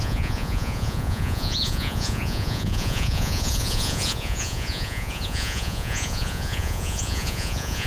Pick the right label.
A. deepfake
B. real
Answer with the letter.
A